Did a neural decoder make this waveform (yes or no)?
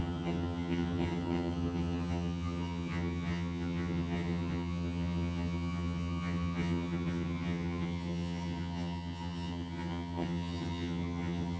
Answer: yes